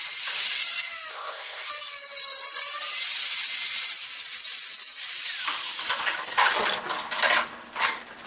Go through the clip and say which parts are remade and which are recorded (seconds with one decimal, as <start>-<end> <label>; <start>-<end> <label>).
0.0-1.1 recorded; 1.1-1.7 remade; 1.7-8.3 recorded